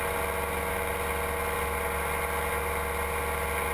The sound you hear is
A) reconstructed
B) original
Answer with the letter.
B